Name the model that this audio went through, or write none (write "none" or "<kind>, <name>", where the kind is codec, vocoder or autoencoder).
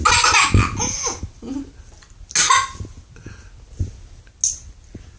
none